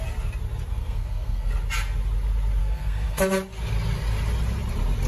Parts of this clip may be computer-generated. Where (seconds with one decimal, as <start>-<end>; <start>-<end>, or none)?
0.7-1.5; 2.6-3.2